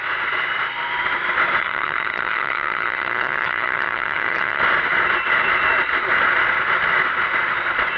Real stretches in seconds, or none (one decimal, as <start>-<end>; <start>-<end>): 0.0-1.6; 4.6-8.0